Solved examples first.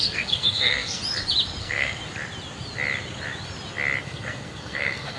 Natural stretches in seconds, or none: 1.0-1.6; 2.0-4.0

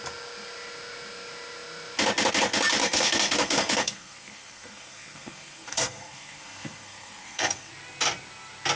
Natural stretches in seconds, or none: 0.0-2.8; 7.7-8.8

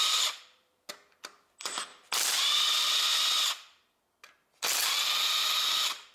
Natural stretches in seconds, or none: 0.9-6.1

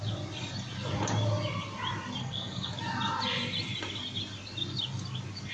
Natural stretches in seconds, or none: 0.0-2.2; 2.7-5.5